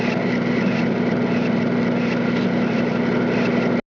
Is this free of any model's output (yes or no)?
yes